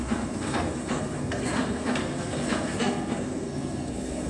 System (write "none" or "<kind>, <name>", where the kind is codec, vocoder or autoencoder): codec, SNAC